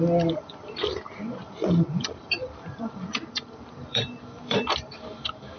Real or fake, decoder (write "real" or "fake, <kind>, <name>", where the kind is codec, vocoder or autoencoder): fake, vocoder, BigVGAN v2